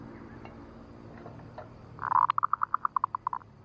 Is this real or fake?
real